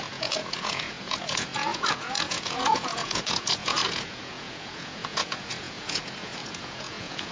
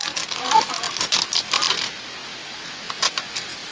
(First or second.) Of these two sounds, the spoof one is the first